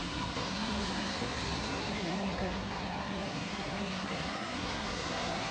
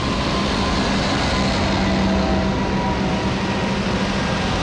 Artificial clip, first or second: first